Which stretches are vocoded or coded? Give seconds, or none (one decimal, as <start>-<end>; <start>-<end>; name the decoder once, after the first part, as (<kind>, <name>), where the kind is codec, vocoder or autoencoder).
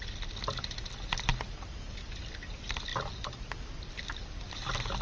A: none